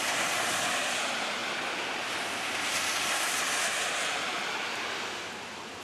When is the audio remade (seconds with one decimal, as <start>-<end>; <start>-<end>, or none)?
none